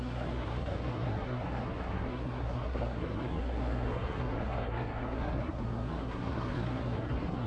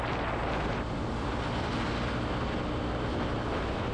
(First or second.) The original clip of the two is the second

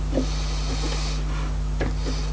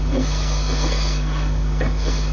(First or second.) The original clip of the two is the first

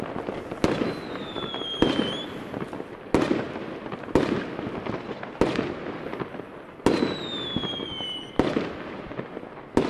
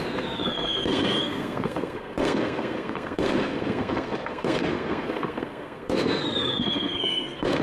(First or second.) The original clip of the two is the first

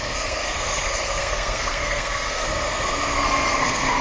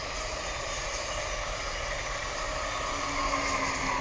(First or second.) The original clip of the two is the second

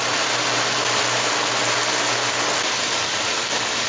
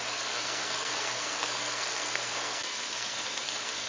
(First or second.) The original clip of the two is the first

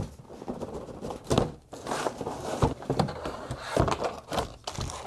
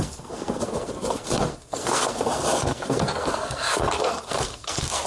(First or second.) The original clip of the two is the first